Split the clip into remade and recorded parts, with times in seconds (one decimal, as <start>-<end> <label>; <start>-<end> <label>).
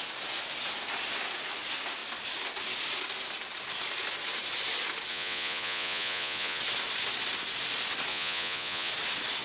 0.0-5.1 recorded; 5.1-6.6 remade; 6.6-8.1 recorded; 8.1-8.9 remade; 8.9-9.4 recorded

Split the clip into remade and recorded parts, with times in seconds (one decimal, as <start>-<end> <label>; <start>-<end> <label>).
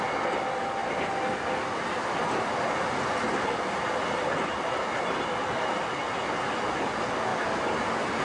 0.0-8.2 recorded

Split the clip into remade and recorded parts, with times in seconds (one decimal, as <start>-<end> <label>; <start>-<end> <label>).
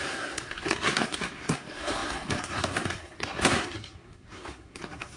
0.0-5.2 remade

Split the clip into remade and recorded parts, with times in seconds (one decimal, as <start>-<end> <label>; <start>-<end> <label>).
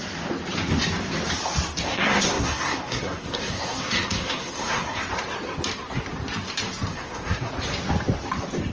0.0-1.9 recorded; 1.9-5.0 remade; 5.0-6.9 recorded; 6.9-7.5 remade; 7.5-8.7 recorded